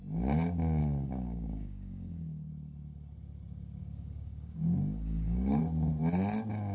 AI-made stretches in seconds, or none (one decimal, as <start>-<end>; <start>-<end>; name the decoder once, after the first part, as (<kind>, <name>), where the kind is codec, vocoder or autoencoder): 0.8-2.5 (codec, DAC); 3.8-5.6